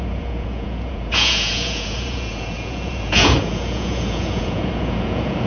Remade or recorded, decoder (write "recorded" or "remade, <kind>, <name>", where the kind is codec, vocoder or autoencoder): remade, vocoder, Vocos